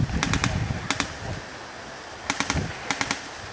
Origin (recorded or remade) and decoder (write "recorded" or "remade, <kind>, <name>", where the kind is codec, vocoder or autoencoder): recorded